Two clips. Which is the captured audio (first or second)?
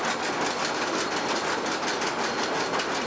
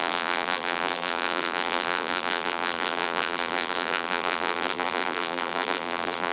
first